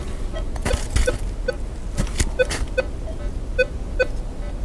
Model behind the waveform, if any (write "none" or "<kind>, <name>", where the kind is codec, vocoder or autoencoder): none